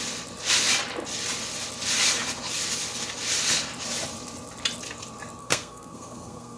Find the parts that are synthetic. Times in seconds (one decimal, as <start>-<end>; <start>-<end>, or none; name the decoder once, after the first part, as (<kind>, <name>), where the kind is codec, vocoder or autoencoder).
5.4-6.6 (codec, SNAC)